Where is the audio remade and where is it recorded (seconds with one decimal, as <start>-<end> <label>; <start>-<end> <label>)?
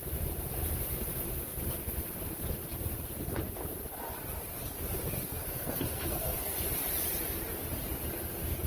0.0-5.4 recorded; 5.4-6.6 remade; 6.6-8.7 recorded